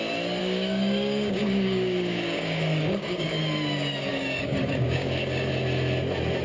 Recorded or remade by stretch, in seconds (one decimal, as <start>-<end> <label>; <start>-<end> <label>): 0.0-0.4 recorded; 0.4-3.4 remade; 3.4-4.1 recorded; 4.1-5.5 remade; 5.5-6.4 recorded